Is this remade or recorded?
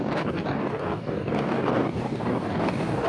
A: remade